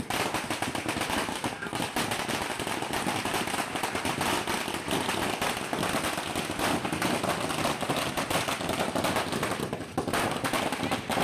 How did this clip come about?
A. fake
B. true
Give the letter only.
B